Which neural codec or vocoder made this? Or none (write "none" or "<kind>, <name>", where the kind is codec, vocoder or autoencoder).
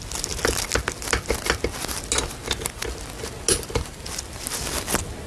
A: none